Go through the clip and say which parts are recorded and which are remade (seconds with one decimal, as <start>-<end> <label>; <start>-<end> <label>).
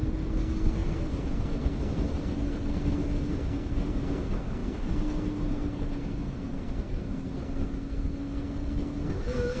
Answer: 0.0-9.6 remade